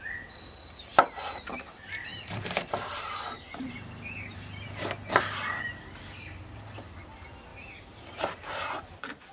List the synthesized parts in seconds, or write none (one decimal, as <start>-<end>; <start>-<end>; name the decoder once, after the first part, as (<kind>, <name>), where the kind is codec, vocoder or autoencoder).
2.1-6.0 (vocoder, BigVGAN v2); 7.5-9.3